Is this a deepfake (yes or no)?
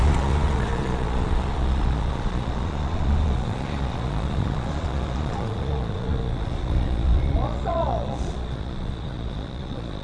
yes